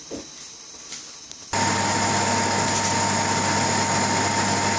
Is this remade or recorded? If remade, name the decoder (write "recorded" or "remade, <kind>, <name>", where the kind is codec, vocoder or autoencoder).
recorded